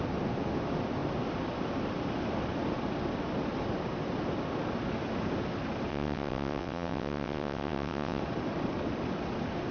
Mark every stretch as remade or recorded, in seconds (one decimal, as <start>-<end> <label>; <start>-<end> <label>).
0.0-5.9 recorded; 5.9-8.2 remade; 8.2-9.7 recorded